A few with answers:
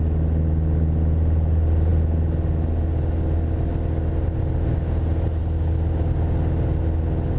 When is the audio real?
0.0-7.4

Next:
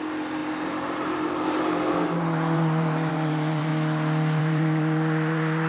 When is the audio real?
3.7-4.4

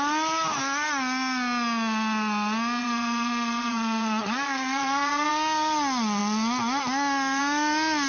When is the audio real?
0.0-2.8; 5.3-8.1

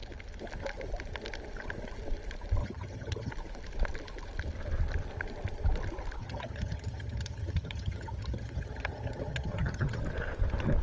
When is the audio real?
0.0-2.6; 3.3-6.2; 10.0-10.8

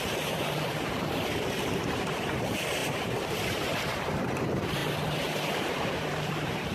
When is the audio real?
none

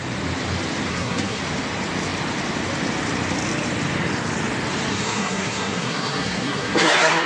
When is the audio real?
0.0-0.9; 1.4-4.9